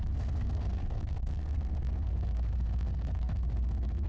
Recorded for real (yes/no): no